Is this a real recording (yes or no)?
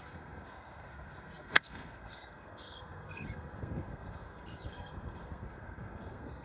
no